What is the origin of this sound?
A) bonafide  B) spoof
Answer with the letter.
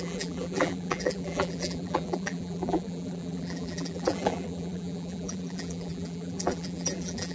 B